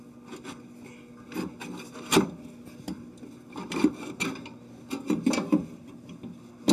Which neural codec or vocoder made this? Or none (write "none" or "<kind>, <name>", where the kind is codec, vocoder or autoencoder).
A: none